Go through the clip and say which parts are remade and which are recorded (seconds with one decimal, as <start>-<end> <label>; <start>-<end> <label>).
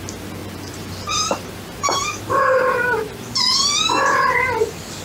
0.0-0.4 recorded; 0.4-2.6 remade; 2.6-5.0 recorded